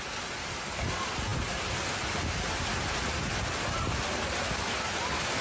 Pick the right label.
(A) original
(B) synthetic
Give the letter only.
A